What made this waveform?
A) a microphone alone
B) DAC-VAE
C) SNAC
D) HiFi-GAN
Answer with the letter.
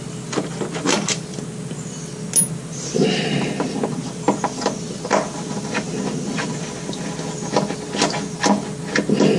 A